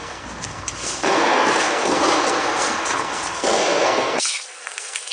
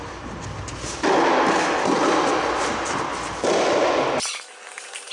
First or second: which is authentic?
second